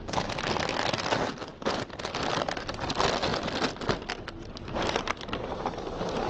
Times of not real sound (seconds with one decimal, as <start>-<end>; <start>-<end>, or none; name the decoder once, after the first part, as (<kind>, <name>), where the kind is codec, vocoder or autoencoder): none